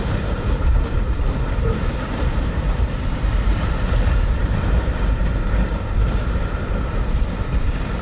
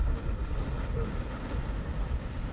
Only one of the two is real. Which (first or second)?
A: second